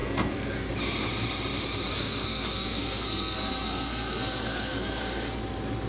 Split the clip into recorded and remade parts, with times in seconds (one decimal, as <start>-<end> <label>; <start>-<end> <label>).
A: 0.0-0.7 remade; 0.7-1.9 recorded; 1.9-5.4 remade; 5.4-5.9 recorded